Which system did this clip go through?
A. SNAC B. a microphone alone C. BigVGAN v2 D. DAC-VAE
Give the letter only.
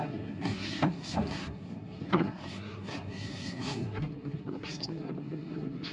A